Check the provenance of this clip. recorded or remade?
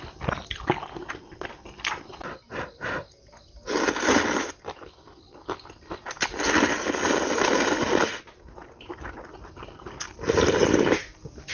recorded